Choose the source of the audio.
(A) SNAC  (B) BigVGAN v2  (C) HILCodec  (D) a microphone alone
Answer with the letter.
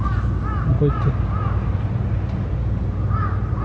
D